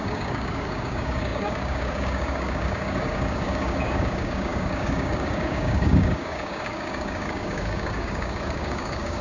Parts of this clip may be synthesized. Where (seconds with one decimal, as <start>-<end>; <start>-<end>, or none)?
0.0-9.2